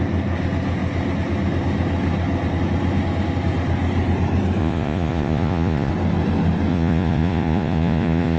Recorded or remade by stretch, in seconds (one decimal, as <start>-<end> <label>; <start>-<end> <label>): 0.0-4.6 recorded; 4.6-5.9 remade; 5.9-6.7 recorded; 6.7-8.4 remade